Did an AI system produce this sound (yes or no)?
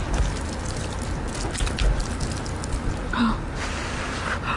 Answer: no